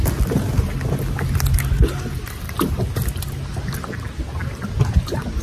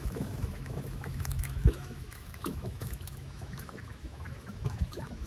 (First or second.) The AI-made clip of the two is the second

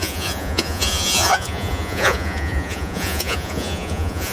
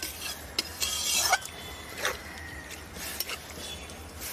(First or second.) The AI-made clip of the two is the first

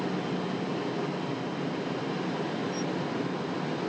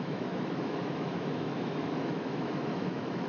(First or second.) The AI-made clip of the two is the second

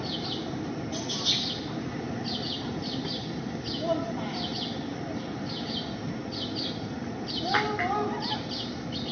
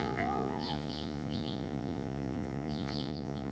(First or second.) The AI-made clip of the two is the second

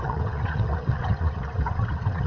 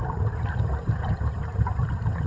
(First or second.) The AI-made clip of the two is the first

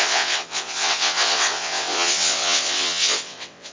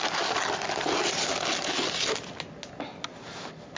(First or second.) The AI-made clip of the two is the first